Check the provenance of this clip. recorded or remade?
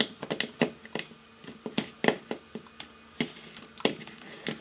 recorded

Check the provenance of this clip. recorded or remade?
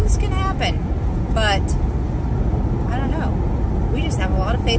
recorded